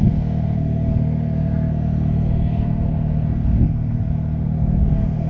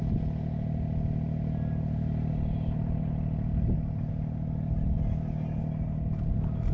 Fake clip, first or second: first